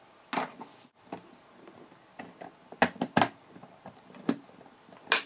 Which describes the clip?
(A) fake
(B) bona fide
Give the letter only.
B